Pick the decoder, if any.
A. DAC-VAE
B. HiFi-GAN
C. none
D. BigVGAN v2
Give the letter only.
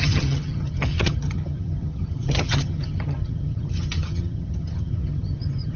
B